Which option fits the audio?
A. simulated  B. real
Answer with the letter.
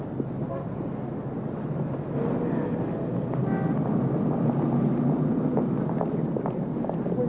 B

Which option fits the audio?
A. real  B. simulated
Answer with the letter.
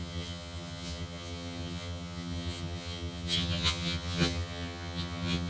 B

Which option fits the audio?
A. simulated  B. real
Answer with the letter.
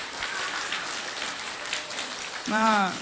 A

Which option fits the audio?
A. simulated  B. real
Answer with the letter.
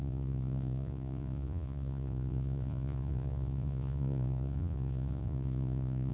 A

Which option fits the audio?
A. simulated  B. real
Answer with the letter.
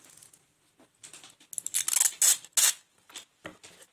B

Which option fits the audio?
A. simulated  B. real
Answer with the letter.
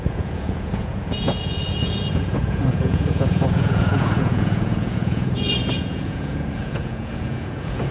A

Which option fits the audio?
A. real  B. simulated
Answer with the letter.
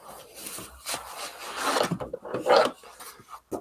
A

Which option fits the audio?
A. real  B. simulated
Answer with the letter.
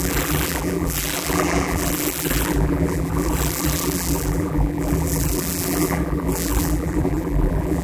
B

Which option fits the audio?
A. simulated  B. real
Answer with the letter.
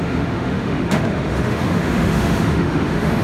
A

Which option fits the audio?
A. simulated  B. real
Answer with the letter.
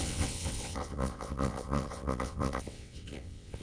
A